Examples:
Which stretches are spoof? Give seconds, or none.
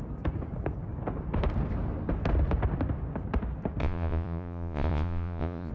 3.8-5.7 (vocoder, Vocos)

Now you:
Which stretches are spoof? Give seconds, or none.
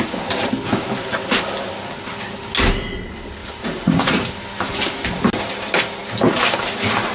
3.4-4.3 (vocoder, Vocos)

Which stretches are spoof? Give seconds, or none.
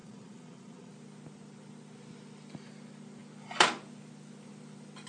0.0-0.9 (vocoder, Vocos)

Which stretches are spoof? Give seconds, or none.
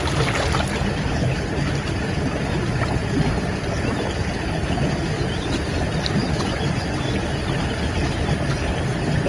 6.2-7.0 (vocoder, Vocos)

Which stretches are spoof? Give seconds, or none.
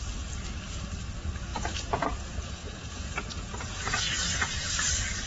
1.5-4.7 (vocoder, Vocos)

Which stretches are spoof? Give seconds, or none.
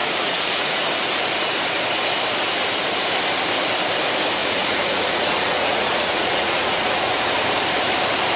0.0-0.8 (vocoder, Vocos); 4.4-7.3